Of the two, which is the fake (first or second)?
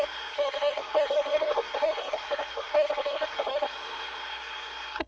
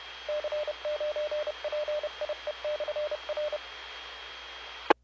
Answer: first